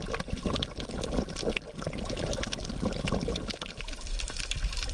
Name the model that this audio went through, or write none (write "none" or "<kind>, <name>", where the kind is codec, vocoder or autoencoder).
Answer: none